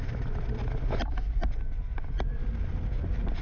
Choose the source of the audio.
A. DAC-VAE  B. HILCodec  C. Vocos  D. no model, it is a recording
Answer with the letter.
D